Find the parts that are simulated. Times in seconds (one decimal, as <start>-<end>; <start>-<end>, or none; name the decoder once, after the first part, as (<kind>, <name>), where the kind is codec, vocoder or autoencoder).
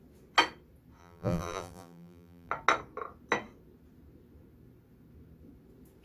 1.0-2.5 (vocoder, BigVGAN v2)